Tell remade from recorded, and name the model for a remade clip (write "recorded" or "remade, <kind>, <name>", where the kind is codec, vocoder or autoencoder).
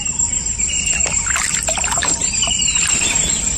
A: recorded